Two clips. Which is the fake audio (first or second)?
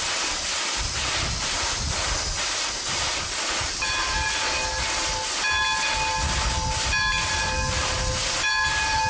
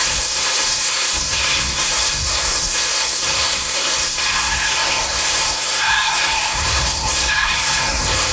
second